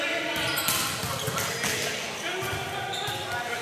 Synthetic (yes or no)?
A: no